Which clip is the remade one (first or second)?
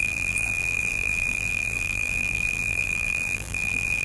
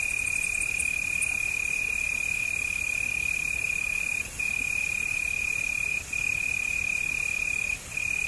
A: first